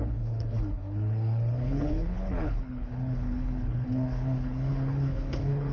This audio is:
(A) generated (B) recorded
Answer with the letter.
A